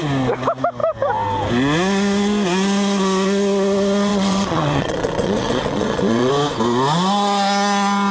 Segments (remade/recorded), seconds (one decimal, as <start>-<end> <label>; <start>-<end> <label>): 0.0-4.1 recorded; 4.1-6.3 remade; 6.3-8.1 recorded